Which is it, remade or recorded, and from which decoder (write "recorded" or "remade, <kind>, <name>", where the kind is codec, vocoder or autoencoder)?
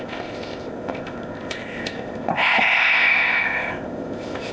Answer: remade, codec, ZipCodec